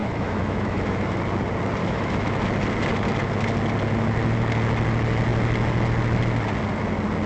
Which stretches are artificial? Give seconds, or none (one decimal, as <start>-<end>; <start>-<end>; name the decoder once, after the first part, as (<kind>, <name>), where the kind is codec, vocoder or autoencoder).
0.0-1.2 (autoencoder, DAC-VAE); 1.8-2.4